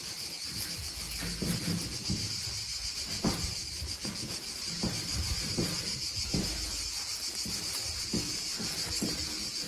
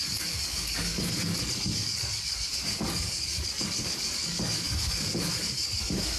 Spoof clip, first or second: second